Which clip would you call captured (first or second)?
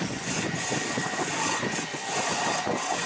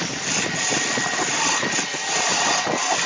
second